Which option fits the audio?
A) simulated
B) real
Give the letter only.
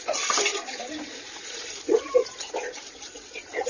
A